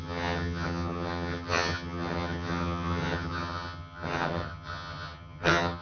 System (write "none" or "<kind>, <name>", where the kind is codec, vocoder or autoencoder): vocoder, HiFi-GAN